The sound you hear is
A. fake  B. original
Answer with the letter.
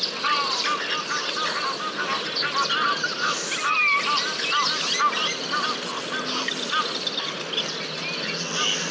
B